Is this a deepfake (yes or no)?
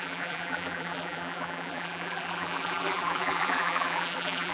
yes